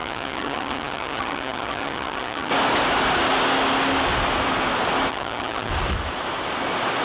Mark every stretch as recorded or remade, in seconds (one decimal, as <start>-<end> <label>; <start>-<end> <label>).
0.0-2.5 remade; 2.5-5.1 recorded; 5.1-5.7 remade; 5.7-7.0 recorded